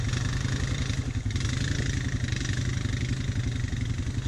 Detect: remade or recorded recorded